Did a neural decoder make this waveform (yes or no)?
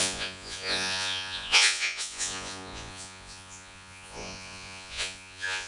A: yes